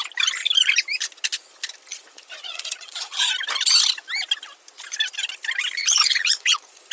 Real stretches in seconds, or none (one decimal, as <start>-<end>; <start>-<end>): 0.0-1.9; 3.3-5.8